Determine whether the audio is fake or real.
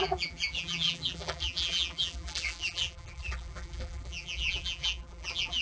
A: fake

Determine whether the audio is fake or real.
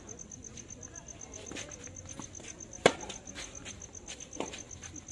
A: real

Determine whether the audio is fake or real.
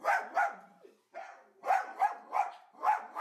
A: real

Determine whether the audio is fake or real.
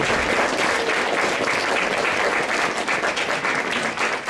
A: real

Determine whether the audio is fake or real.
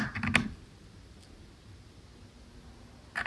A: real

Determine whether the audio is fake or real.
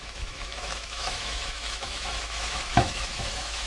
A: fake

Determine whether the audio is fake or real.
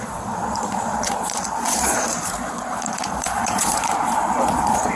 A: fake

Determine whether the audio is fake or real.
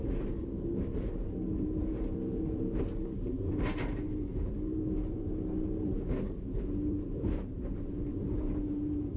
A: fake